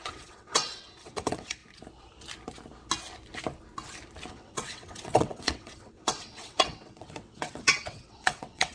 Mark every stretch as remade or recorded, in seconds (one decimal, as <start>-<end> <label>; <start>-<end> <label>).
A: 0.0-1.6 remade; 1.6-4.3 recorded; 4.3-8.7 remade